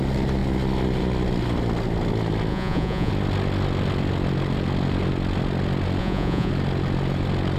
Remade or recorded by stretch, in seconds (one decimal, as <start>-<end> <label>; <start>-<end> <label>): 0.0-2.5 recorded; 2.5-3.1 remade; 3.1-6.0 recorded; 6.0-6.5 remade; 6.5-7.6 recorded